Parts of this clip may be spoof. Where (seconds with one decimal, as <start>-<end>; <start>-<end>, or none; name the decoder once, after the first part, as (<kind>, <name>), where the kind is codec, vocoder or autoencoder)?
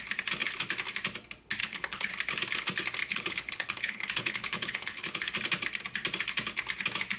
1.6-2.1 (codec, HILCodec); 3.0-5.3